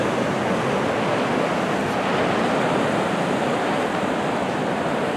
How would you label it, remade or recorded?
recorded